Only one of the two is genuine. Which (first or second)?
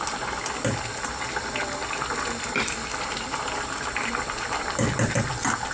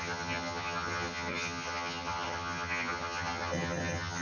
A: first